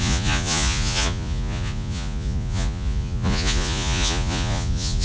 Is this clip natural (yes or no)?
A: no